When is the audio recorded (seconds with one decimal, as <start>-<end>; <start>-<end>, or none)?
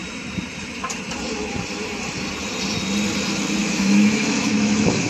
0.0-3.6